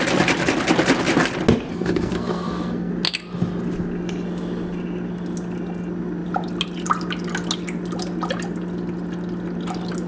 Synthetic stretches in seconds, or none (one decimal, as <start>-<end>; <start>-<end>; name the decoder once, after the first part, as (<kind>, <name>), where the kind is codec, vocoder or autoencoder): 1.7-2.9 (codec, SNAC)